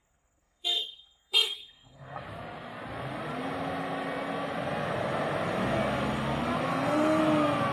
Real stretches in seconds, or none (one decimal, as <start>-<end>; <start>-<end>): 2.2-6.7; 7.2-7.7